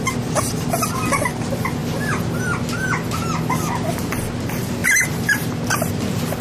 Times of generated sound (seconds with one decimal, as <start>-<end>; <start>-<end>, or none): 4.8-5.5